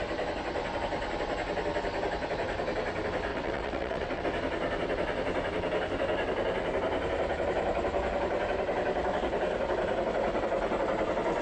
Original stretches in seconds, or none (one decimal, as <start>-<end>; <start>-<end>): 0.0-3.3; 4.2-11.4